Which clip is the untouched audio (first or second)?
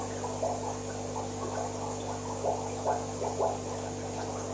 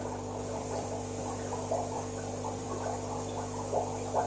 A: first